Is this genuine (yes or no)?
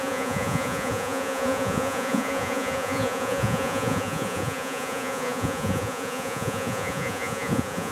no